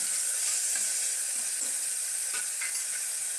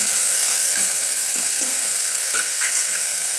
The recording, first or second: first